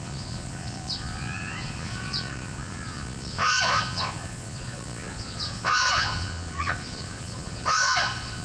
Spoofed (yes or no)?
yes